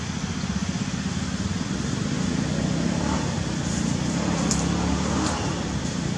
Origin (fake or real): real